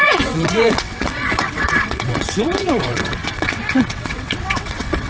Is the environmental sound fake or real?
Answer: fake